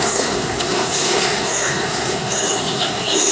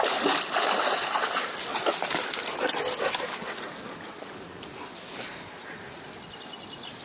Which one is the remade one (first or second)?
first